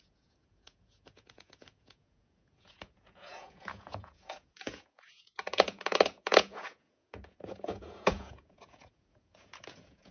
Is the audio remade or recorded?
remade